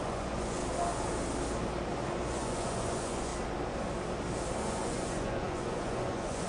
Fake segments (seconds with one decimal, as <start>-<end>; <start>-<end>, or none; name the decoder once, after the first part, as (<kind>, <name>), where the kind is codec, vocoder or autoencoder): 0.0-0.6 (vocoder, Vocos); 2.3-3.3; 4.6-6.5